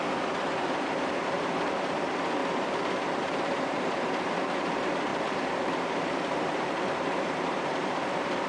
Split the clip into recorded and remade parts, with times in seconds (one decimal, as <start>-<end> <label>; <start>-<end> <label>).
0.0-2.4 remade; 2.4-3.2 recorded; 3.2-8.5 remade